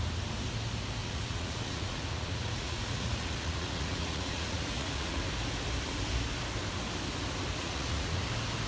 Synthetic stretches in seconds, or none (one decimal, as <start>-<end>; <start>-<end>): 1.0-5.2; 7.6-8.2